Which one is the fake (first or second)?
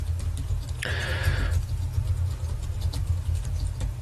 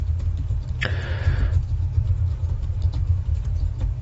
second